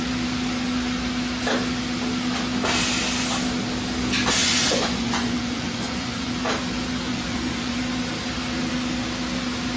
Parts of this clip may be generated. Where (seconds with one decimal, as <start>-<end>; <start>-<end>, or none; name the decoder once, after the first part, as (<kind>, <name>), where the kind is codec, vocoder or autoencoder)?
4.4-6.3 (vocoder, Vocos); 7.1-7.8